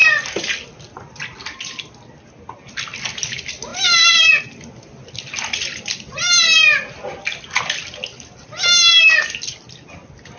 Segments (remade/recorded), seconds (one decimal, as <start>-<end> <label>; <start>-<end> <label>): 0.0-10.4 recorded